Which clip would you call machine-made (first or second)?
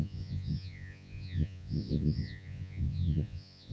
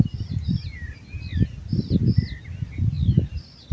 first